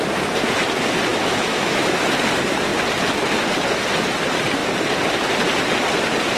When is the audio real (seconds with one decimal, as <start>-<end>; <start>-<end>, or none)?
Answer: 0.0-1.1; 2.0-6.4